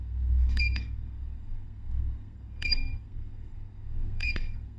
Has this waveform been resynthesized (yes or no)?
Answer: yes